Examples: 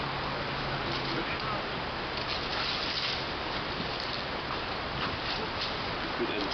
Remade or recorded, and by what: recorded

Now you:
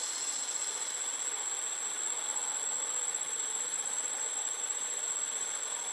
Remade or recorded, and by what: recorded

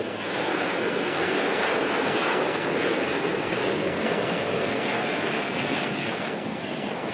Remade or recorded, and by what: remade, codec, SNAC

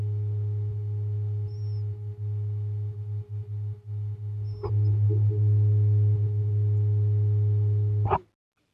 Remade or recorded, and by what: recorded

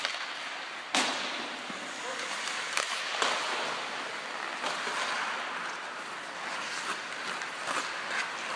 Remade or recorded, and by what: recorded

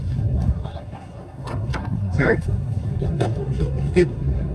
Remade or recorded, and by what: remade, codec, SNAC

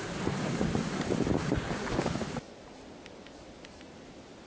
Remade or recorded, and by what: recorded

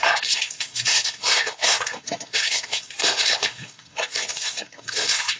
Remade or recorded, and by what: remade, codec, SNAC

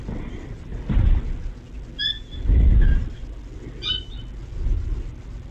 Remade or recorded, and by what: recorded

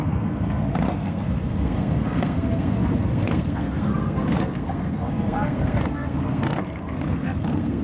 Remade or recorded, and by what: remade, codec, SNAC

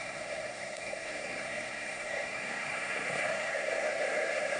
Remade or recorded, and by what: remade, codec, SNAC